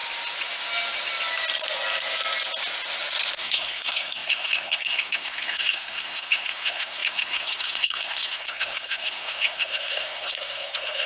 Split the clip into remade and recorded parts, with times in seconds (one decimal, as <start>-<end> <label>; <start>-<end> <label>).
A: 0.0-3.4 recorded; 3.4-11.1 remade